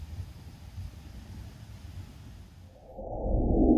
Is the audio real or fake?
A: real